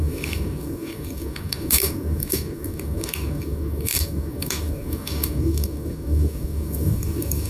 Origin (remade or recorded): remade